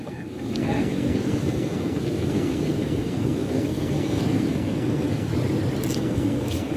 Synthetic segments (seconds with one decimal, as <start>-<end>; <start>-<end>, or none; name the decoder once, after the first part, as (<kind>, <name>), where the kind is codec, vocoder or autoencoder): 0.0-5.3 (codec, SNAC); 5.9-6.8